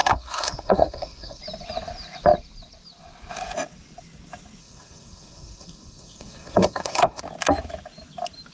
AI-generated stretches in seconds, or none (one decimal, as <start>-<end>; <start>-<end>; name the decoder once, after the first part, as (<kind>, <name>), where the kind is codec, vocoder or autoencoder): 0.0-1.4 (codec, SNAC); 4.6-7.2